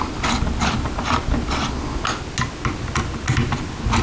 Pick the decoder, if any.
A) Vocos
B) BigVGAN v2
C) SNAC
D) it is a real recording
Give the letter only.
D